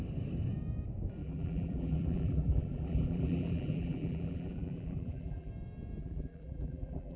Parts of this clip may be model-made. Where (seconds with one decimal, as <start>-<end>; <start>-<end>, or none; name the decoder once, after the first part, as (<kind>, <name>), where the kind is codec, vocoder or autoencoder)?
1.2-5.5 (vocoder, BigVGAN v2); 6.0-7.2

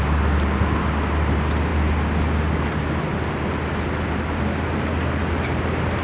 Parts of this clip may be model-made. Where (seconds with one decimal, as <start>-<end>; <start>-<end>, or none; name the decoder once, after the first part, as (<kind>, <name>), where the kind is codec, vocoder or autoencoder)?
none